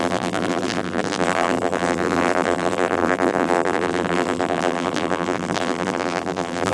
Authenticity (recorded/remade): remade